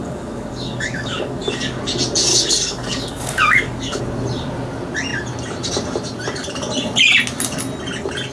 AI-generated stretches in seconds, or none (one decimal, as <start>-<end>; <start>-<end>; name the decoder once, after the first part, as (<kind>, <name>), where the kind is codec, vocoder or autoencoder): 0.0-1.8 (codec, DAC); 2.3-4.0